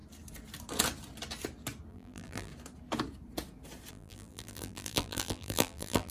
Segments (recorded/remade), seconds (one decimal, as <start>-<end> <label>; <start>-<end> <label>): 0.0-1.9 recorded; 1.9-2.5 remade; 2.5-3.9 recorded; 3.9-6.1 remade